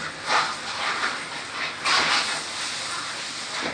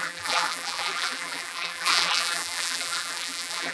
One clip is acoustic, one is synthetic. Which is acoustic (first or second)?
first